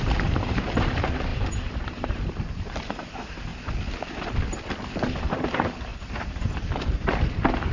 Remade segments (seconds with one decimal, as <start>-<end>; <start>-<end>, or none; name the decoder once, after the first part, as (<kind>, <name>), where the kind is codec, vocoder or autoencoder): 0.0-3.5 (vocoder, BigVGAN v2); 5.2-7.7